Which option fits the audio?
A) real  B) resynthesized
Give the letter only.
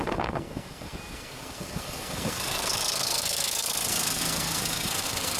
B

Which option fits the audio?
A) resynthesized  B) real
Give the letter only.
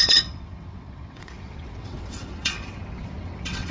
A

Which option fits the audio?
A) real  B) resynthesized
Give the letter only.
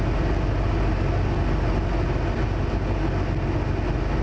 A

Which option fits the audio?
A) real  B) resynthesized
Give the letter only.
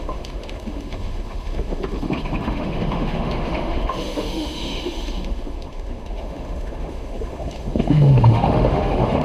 B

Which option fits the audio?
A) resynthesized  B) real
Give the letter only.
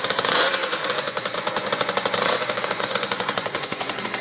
A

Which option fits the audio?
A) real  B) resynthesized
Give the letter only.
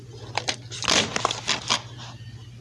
A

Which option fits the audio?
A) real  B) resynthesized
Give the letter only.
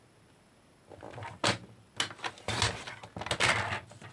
A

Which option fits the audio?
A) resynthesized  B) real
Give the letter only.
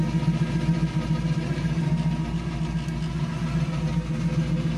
B